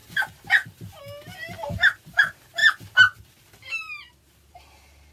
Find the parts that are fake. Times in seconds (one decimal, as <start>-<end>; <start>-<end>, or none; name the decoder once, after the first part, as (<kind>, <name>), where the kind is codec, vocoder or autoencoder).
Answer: none